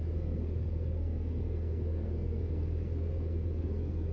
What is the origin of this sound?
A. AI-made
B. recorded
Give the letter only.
A